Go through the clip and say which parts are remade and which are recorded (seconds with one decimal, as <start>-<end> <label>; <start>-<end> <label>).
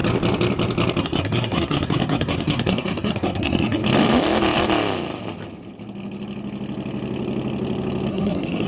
0.0-1.0 recorded; 1.0-3.8 remade; 3.8-8.1 recorded; 8.1-8.7 remade